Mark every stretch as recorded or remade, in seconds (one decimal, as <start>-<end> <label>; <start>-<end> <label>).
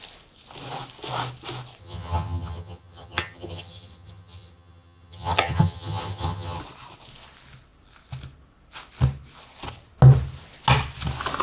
0.0-1.8 recorded; 1.8-6.6 remade; 6.6-11.4 recorded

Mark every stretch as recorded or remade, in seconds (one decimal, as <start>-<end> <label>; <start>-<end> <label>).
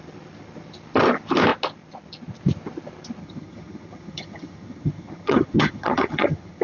0.0-3.2 recorded; 3.2-6.6 remade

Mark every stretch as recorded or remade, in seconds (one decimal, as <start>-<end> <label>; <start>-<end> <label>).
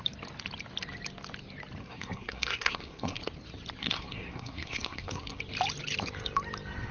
0.0-1.8 recorded; 1.8-3.2 remade; 3.2-3.8 recorded; 3.8-5.4 remade; 5.4-6.9 recorded